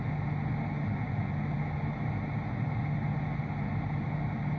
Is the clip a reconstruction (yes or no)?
no